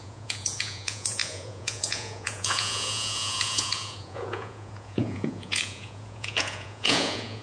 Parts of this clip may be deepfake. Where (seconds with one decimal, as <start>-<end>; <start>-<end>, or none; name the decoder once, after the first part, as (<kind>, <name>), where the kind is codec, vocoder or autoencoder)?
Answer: 0.0-7.4 (vocoder, Vocos)

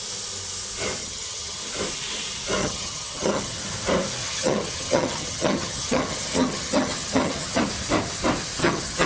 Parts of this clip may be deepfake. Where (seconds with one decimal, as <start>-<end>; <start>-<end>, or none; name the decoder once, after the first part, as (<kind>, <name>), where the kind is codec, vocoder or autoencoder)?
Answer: 1.0-1.6 (vocoder, HiFi-GAN); 2.6-3.6; 4.2-7.6; 8.6-9.1

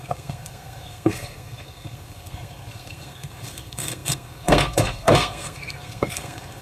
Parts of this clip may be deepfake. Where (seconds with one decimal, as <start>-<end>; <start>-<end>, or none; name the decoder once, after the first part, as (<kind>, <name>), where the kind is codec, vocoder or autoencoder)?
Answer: 0.0-6.6 (codec, SNAC)

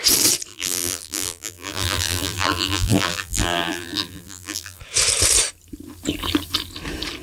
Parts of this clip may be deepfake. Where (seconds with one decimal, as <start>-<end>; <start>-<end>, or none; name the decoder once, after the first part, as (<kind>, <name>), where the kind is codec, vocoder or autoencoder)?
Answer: 0.5-4.8 (vocoder, BigVGAN v2)

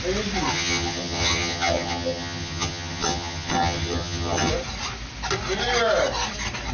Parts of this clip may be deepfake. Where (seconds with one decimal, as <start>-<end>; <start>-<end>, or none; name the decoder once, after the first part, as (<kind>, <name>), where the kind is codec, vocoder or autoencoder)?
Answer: 0.5-4.5 (vocoder, HiFi-GAN)

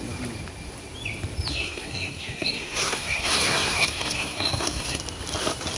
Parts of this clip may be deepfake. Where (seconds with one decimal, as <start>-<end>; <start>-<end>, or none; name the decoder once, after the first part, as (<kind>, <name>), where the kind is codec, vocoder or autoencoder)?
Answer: 1.5-5.0 (codec, SNAC)

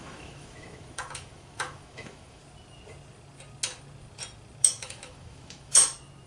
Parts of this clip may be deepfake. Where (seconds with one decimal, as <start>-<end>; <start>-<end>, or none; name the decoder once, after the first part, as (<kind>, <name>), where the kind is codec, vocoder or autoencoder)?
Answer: 0.0-2.4 (autoencoder, DAC-VAE); 4.6-5.8

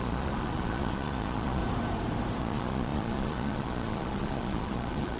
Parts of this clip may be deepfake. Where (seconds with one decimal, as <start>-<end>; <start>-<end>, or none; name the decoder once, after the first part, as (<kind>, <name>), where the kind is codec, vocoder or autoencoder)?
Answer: 0.0-1.6 (vocoder, Vocos); 2.4-5.2